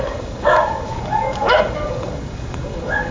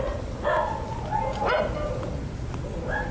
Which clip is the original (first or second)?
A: second